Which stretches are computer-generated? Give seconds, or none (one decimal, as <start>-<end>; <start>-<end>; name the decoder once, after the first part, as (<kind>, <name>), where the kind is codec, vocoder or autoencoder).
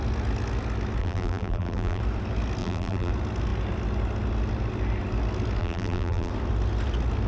1.0-2.0 (vocoder, BigVGAN v2); 2.6-3.1; 5.6-6.3